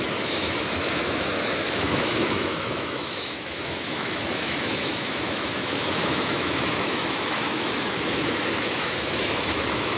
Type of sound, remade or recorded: remade